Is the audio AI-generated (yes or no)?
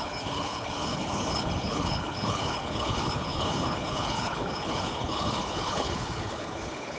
yes